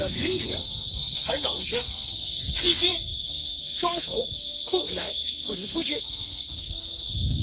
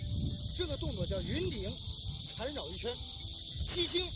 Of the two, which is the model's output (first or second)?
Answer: first